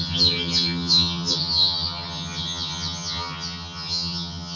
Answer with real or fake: fake